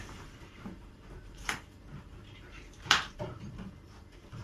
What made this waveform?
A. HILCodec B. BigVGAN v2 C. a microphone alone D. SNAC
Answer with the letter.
B